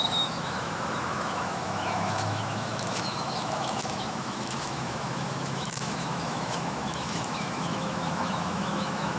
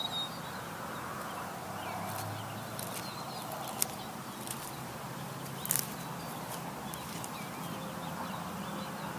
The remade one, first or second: first